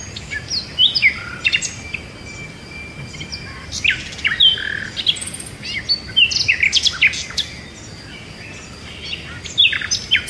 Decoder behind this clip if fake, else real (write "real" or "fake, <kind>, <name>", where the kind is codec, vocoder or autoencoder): real